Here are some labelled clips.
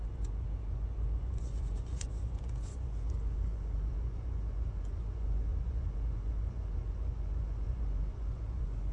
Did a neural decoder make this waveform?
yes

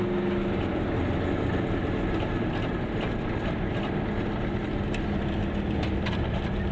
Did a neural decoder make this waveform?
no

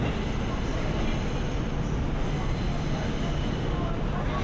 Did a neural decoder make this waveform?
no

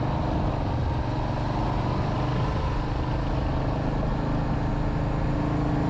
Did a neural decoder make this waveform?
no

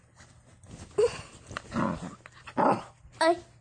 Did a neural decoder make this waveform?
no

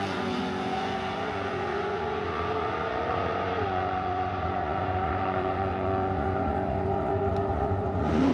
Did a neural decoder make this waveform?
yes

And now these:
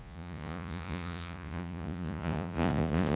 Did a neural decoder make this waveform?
yes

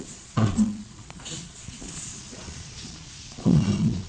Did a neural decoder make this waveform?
yes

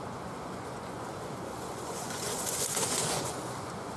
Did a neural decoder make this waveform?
yes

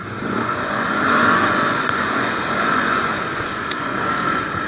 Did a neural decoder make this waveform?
yes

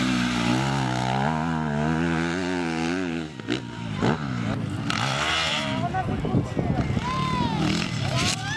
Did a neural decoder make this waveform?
no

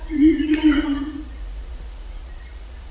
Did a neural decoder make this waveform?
yes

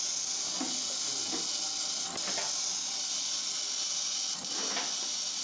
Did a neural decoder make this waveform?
no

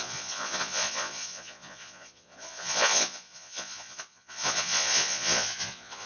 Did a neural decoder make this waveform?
yes